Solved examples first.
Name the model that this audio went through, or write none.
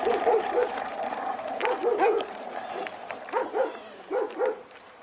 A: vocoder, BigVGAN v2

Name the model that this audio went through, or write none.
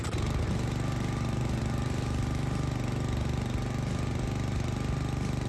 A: none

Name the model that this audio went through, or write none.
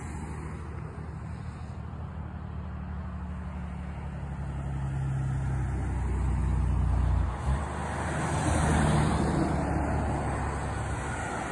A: none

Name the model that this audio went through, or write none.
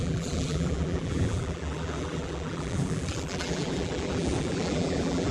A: vocoder, BigVGAN v2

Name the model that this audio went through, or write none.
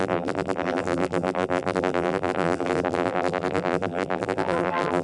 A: vocoder, BigVGAN v2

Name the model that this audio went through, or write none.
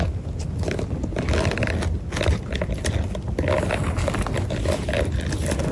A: none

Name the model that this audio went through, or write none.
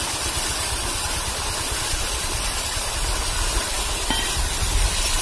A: vocoder, BigVGAN v2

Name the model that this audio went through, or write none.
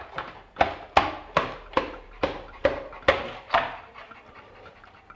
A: vocoder, BigVGAN v2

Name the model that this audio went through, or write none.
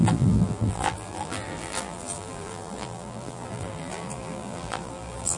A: vocoder, BigVGAN v2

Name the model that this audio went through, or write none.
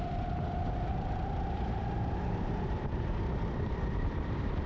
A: vocoder, BigVGAN v2